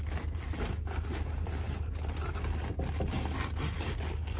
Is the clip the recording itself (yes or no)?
yes